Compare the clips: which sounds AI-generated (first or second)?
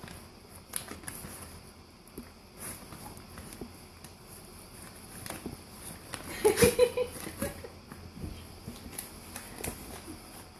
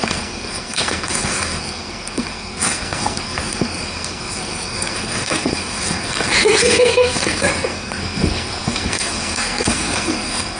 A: second